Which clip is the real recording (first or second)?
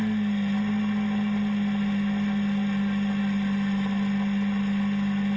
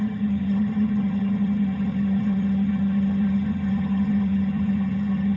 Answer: first